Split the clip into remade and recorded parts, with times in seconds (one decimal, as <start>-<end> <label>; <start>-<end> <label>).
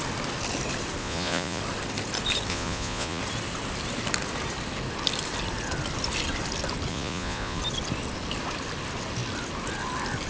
0.0-1.0 recorded; 1.0-1.6 remade; 1.6-2.5 recorded; 2.5-3.2 remade; 3.2-6.9 recorded; 6.9-7.6 remade; 7.6-10.3 recorded